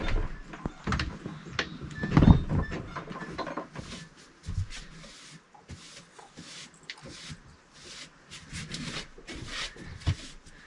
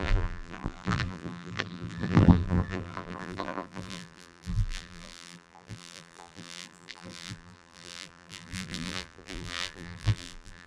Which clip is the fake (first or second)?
second